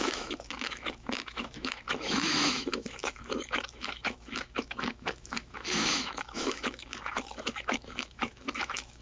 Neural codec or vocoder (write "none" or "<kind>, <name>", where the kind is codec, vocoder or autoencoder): autoencoder, DAC-VAE